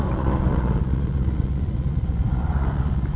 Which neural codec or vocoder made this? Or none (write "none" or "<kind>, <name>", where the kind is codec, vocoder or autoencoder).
vocoder, Vocos